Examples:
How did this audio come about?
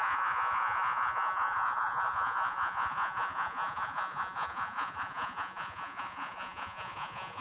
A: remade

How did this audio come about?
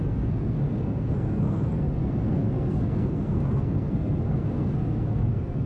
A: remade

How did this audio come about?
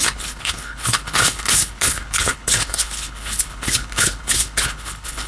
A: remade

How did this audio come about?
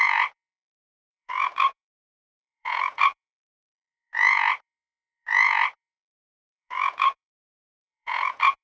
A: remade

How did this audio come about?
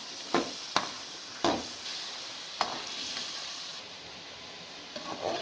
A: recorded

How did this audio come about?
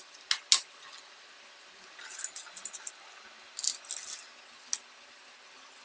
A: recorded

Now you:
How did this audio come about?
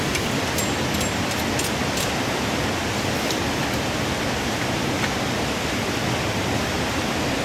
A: recorded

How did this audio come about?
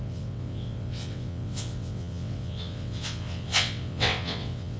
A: remade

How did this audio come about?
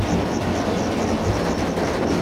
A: recorded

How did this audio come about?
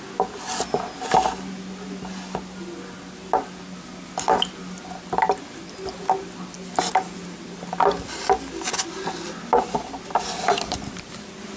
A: recorded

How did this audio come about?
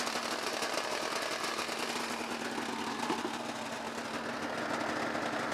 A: recorded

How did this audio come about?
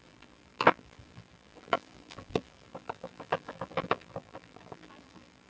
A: remade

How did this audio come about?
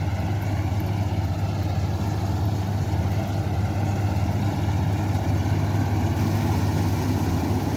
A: recorded